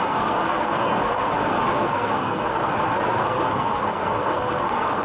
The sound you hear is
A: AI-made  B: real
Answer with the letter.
A